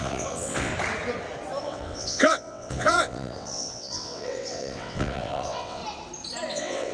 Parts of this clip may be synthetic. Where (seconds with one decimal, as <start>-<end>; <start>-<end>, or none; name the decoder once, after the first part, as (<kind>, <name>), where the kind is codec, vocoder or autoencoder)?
0.0-0.7 (vocoder, WaveNeXt); 1.6-5.8; 6.5-6.9